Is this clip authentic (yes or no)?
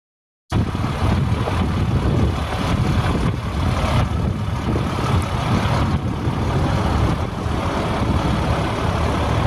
yes